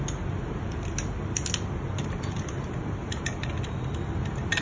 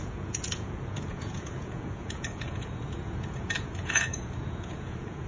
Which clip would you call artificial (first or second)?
second